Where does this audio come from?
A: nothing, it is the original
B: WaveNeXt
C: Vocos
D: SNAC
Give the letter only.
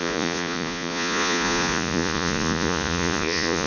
C